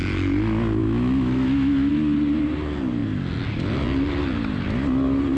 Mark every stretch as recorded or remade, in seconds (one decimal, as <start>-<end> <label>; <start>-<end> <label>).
0.0-0.8 recorded; 0.8-1.9 remade; 1.9-5.4 recorded